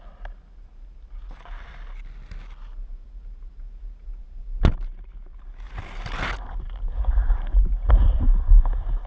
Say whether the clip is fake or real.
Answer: real